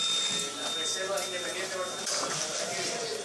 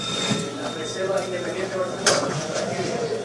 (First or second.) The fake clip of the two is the second